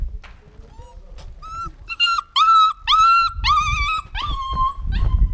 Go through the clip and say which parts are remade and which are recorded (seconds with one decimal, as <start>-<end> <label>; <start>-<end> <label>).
0.0-5.3 recorded